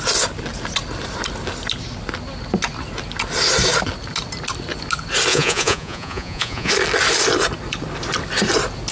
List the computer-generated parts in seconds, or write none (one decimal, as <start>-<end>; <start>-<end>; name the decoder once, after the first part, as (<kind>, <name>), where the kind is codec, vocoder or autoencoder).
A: 5.3-6.7 (vocoder, Vocos)